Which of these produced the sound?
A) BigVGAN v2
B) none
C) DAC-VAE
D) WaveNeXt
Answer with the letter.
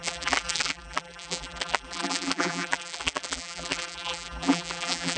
A